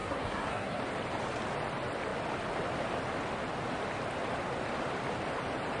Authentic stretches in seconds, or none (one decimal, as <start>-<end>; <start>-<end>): 0.8-5.8